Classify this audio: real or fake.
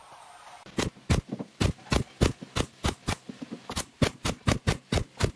real